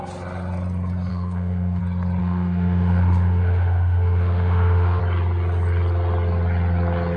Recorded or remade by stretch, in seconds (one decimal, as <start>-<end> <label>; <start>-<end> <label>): 0.0-1.1 recorded; 1.1-1.8 remade; 1.8-2.2 recorded; 2.2-5.0 remade; 5.0-7.2 recorded